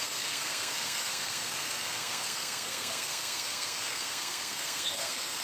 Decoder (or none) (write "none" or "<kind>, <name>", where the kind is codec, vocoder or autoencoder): codec, SNAC